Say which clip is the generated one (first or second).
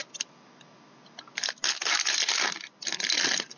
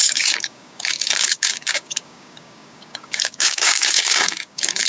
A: second